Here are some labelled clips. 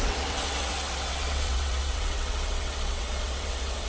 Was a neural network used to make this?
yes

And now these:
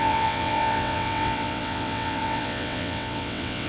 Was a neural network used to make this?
yes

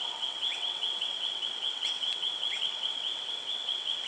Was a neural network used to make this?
yes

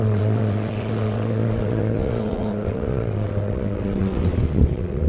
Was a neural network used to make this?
yes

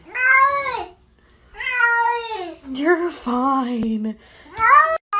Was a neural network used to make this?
no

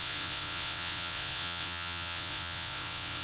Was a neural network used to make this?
yes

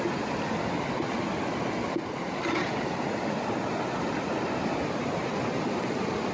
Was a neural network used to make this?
no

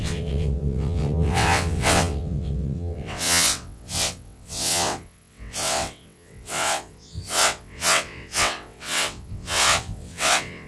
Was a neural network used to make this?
yes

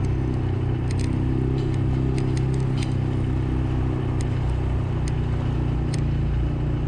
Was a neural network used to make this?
no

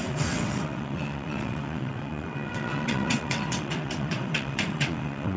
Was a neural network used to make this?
yes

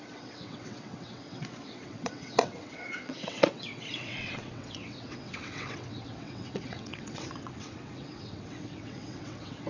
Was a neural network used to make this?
yes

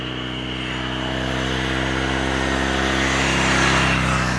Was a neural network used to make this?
no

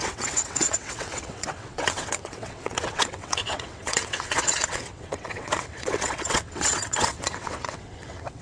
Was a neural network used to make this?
yes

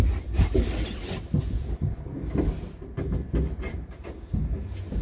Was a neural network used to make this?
no